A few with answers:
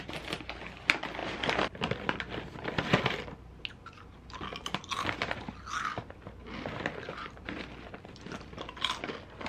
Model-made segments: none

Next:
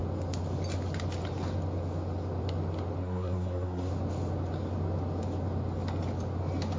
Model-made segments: 3.0-3.9 (codec, SNAC)

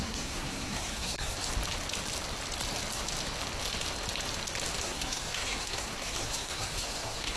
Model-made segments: 0.0-1.5 (codec, SNAC); 4.8-7.4

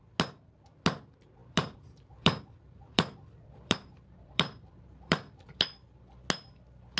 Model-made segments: 1.4-5.6 (vocoder, BigVGAN v2)

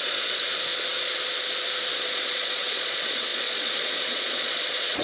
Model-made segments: 0.0-0.7 (vocoder, Vocos); 1.9-5.0

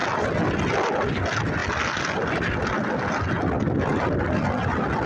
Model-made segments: none

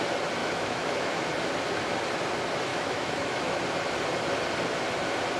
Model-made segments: 0.4-1.2 (autoencoder, DAC-VAE); 2.7-3.6